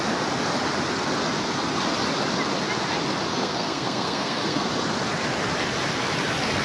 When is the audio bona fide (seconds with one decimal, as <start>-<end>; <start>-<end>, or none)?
0.0-3.3; 4.7-6.6